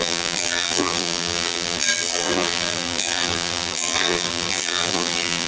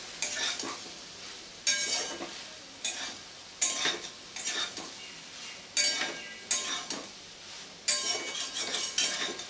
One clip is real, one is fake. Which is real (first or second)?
second